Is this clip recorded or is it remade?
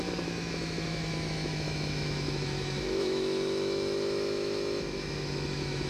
remade